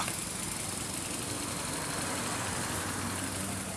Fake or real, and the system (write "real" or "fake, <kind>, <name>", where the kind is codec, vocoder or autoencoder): real